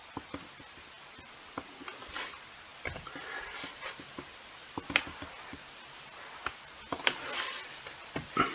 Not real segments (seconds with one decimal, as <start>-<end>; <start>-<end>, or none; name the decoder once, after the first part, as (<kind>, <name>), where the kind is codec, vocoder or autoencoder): none